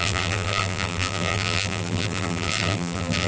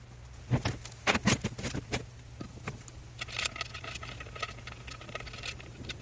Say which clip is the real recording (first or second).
second